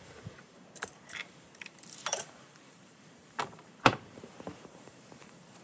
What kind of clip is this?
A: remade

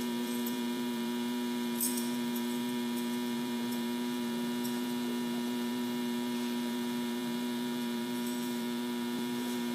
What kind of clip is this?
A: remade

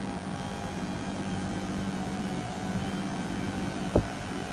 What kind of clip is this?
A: remade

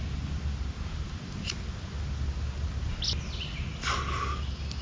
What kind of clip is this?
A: recorded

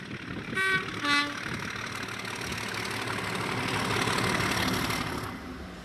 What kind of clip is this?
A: recorded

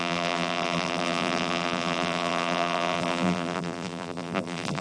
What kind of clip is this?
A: remade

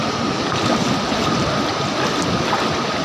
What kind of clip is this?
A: remade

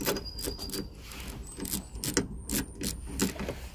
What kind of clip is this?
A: recorded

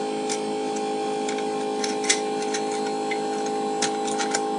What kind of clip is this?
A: recorded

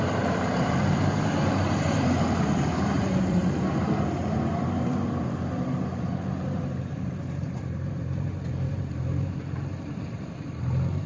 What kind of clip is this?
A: remade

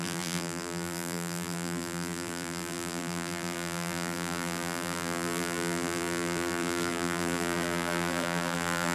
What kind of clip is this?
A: remade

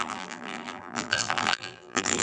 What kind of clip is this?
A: remade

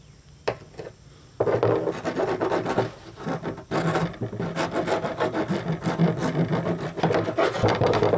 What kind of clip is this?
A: recorded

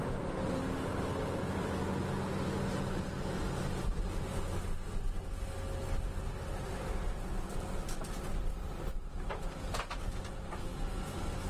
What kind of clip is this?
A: recorded